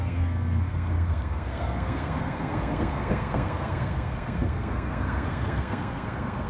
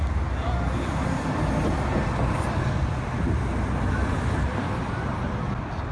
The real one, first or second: second